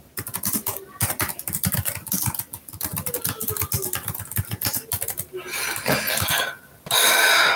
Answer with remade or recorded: recorded